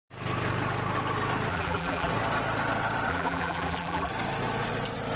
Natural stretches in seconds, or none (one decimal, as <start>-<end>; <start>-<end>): 0.0-1.5; 2.1-3.1; 4.1-5.2